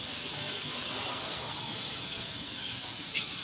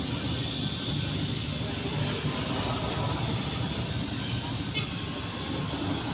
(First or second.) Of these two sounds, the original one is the second